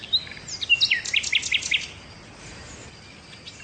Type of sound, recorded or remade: recorded